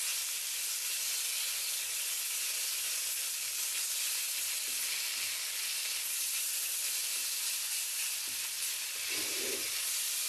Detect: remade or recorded recorded